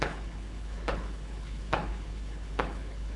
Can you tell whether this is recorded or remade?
remade